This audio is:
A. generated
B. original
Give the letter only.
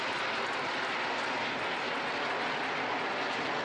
B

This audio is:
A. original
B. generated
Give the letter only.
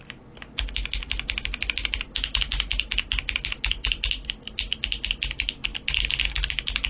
A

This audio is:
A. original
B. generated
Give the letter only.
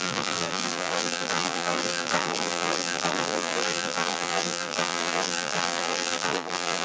B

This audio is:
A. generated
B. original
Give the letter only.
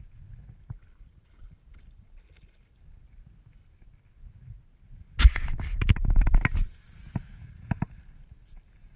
B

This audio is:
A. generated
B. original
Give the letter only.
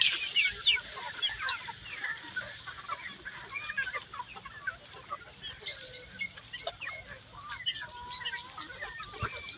B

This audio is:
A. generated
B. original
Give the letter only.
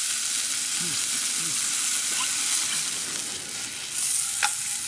B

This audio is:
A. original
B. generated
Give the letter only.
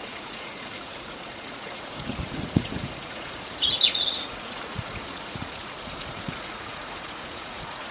B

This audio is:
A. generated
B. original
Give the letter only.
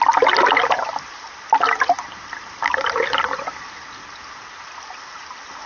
B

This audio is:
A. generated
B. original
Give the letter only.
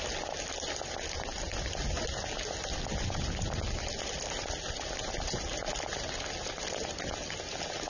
B